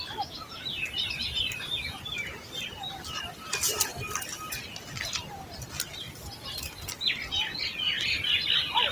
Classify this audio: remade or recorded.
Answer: recorded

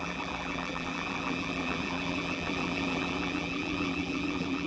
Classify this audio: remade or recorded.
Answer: remade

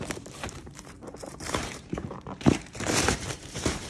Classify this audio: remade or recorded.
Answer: remade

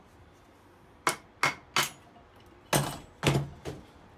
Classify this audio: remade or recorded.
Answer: recorded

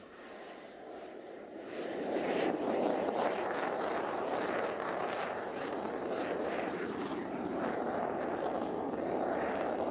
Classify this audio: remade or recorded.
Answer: remade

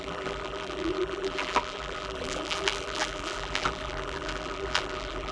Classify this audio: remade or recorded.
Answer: remade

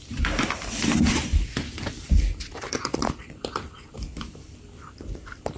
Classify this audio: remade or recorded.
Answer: remade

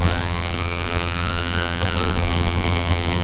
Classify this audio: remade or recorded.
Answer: remade